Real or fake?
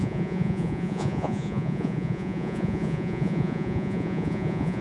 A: fake